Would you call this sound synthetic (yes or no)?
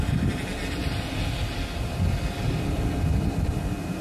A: no